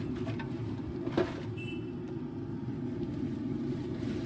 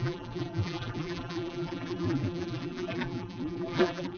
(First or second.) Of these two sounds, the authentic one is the first